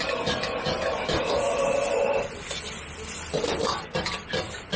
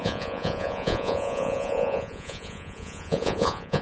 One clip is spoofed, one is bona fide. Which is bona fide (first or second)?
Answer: first